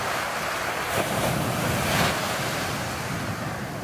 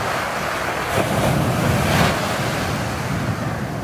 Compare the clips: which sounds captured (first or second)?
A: second